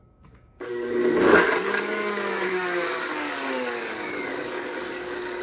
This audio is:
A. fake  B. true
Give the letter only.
A